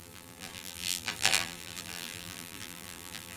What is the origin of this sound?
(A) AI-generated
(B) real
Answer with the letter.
A